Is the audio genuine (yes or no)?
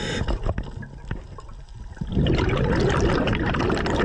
yes